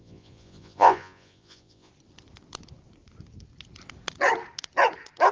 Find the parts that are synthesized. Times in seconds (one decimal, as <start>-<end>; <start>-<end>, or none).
0.0-1.9